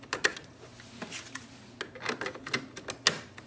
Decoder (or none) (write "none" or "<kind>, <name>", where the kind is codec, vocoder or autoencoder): none